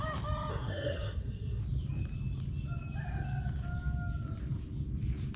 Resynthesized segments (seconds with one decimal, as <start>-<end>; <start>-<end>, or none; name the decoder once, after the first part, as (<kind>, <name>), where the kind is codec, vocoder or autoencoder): 0.5-1.6 (codec, SNAC)